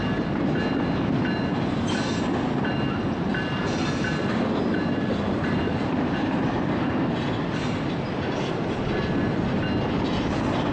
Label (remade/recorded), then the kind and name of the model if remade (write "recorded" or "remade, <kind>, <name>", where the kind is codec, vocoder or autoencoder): recorded